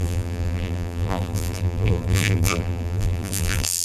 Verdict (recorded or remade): remade